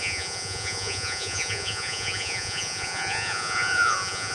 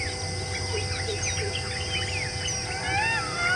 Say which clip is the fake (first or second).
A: first